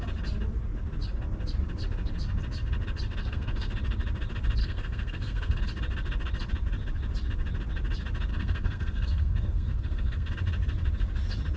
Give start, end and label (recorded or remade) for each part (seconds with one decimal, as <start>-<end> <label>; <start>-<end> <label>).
0.0-3.2 recorded; 3.2-3.7 remade; 3.7-4.6 recorded; 4.6-5.6 remade; 5.6-8.3 recorded; 8.3-10.3 remade; 10.3-11.6 recorded